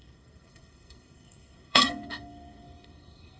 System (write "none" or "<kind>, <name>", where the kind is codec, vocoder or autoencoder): codec, SNAC